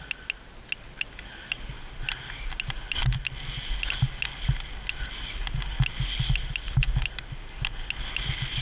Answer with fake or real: real